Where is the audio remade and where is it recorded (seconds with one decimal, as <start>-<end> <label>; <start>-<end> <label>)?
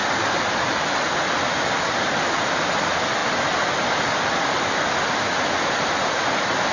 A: 0.0-6.7 recorded